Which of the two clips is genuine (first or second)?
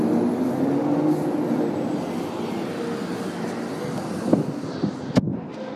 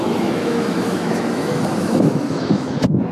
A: first